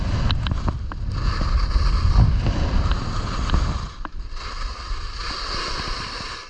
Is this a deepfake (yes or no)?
no